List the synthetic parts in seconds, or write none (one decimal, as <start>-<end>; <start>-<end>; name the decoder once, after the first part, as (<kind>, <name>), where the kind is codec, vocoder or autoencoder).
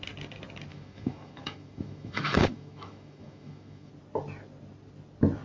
0.7-3.9 (autoencoder, DAC-VAE)